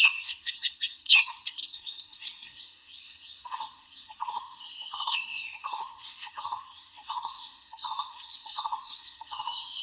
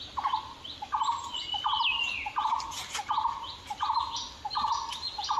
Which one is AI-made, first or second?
first